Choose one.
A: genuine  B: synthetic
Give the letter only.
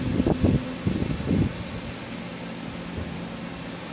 A